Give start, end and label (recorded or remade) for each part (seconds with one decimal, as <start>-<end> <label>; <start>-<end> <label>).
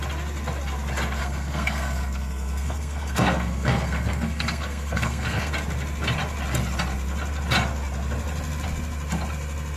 0.0-1.2 recorded; 1.2-5.5 remade; 5.5-9.8 recorded